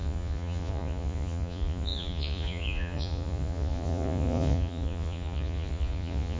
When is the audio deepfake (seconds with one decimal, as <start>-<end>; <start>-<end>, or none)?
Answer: 0.0-6.4